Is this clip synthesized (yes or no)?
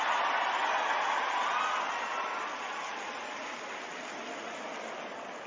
no